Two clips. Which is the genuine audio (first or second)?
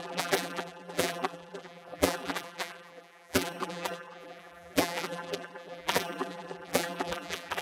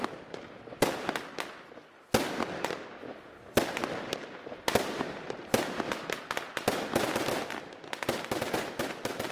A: second